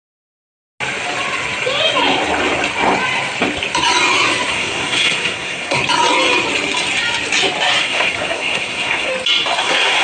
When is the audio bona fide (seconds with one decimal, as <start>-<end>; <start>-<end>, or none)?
0.0-4.5; 5.8-7.8; 9.1-9.6